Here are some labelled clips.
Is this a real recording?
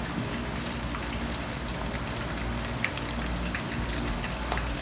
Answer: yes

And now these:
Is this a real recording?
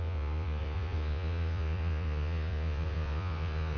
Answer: no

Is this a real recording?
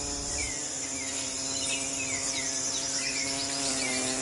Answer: yes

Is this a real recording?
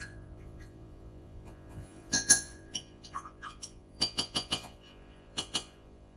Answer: no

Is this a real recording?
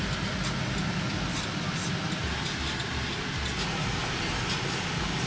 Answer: yes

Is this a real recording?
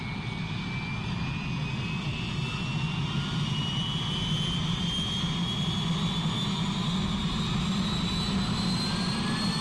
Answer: yes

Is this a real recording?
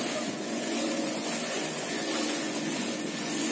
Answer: no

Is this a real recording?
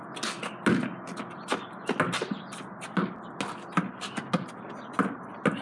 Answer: yes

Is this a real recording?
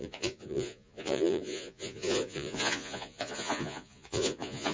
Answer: no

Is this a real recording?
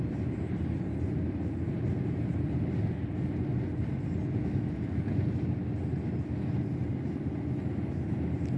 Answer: yes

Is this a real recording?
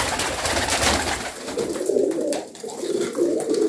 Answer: yes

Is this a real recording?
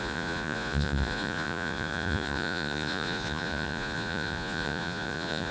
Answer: no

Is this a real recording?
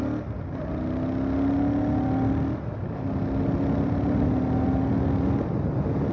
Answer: yes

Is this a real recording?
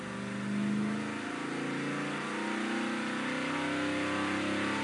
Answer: yes